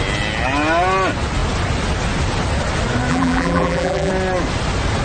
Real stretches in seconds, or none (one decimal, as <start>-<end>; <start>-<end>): 0.0-3.1; 4.1-5.0